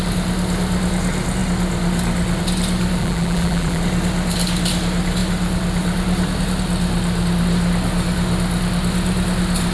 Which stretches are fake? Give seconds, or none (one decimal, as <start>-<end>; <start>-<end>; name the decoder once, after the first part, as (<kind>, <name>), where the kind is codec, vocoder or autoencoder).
3.0-3.8 (vocoder, BigVGAN v2)